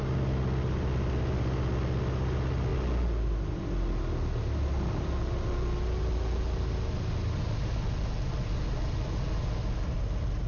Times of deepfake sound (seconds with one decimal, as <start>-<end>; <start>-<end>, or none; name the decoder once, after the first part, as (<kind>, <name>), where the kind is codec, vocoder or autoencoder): none